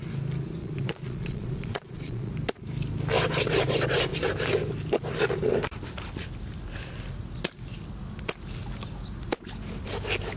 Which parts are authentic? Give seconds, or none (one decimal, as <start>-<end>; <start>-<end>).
0.0-0.6; 2.3-10.4